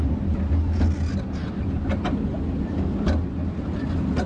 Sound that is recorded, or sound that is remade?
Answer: recorded